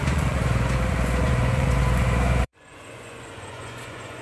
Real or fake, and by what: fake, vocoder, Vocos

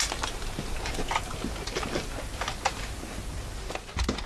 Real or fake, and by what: real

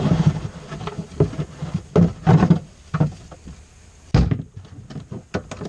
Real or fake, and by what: real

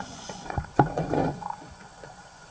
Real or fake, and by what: fake, vocoder, Vocos